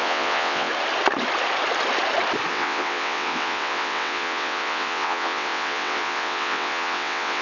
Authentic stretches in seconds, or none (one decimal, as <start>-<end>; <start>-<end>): 0.7-2.5